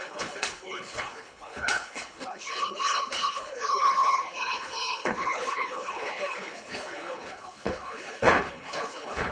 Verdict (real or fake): fake